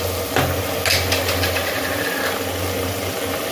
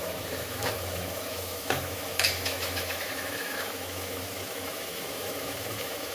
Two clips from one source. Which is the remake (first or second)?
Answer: second